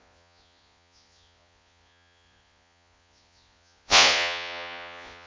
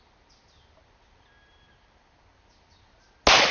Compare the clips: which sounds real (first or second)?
second